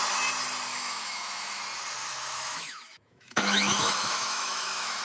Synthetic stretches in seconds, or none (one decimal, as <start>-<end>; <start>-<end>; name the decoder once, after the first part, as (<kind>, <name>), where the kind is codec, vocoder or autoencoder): 0.7-1.6 (autoencoder, DAC-VAE); 2.0-5.0